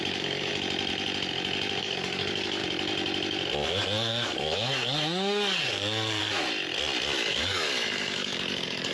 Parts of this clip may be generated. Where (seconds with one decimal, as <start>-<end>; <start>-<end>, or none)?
0.0-0.5; 1.8-2.6; 3.7-6.2; 7.3-8.9